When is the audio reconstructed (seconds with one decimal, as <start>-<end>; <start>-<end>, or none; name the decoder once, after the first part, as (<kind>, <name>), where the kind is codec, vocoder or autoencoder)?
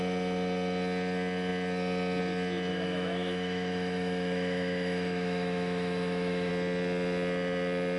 2.7-6.5 (autoencoder, DAC-VAE)